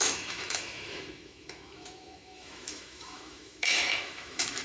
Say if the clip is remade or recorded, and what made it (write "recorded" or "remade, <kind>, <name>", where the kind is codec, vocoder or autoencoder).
remade, autoencoder, DAC-VAE